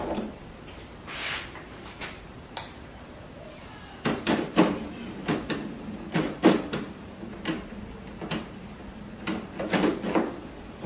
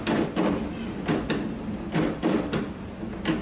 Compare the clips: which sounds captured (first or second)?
second